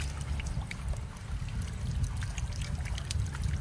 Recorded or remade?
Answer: recorded